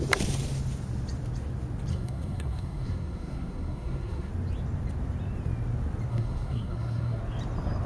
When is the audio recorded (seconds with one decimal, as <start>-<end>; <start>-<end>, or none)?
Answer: 0.0-1.9; 4.3-6.1; 7.2-7.9